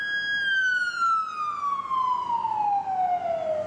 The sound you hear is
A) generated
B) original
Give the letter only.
B